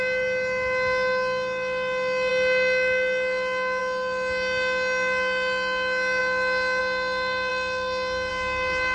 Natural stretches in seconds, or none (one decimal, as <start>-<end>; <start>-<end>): 0.0-8.9